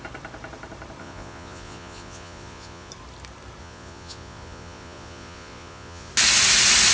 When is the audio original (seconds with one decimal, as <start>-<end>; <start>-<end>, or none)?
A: 0.0-1.0; 2.9-3.6; 6.1-6.9